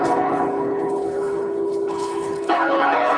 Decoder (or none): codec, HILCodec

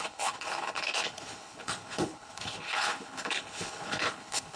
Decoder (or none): codec, HILCodec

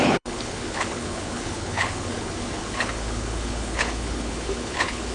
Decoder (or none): codec, HILCodec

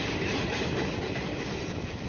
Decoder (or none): none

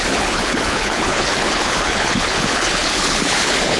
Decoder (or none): codec, HILCodec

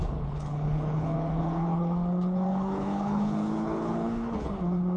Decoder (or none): codec, HILCodec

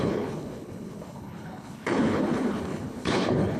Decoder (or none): codec, HILCodec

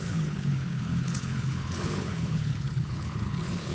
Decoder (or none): codec, HILCodec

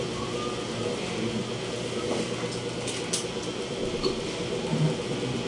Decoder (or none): none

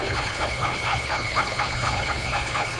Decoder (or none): codec, HILCodec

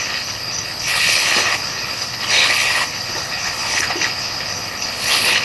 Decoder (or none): codec, HILCodec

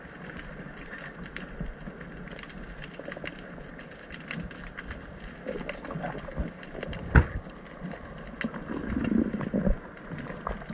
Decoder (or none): none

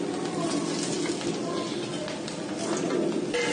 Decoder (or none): none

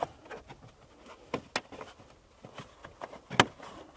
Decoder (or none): none